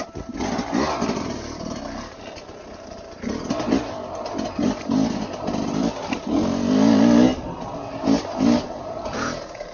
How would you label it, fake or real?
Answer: real